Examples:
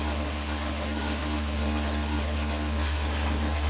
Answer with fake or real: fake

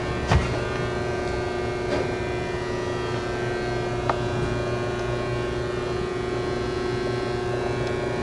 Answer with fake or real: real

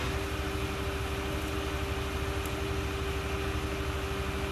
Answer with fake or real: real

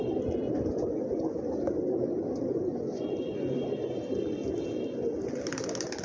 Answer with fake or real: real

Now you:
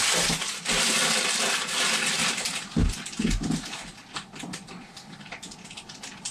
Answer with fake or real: real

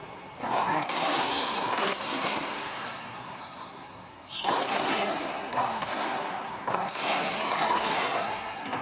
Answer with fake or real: fake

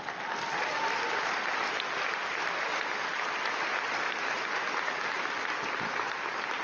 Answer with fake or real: real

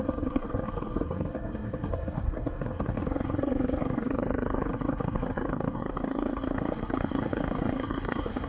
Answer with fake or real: fake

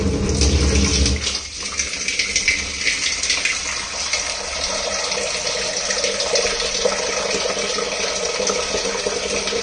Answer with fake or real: real